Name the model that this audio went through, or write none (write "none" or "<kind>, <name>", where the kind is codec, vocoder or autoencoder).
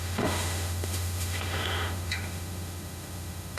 autoencoder, DAC-VAE